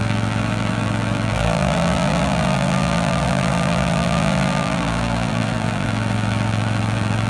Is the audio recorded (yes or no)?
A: no